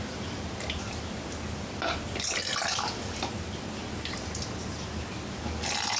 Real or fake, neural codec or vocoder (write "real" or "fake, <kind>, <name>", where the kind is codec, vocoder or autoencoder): real